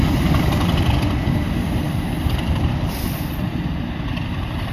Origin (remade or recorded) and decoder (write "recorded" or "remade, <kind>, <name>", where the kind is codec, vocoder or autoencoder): remade, vocoder, BigVGAN v2